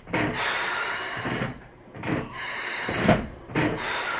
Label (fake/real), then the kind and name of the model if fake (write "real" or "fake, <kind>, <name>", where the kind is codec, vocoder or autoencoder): fake, vocoder, BigVGAN v2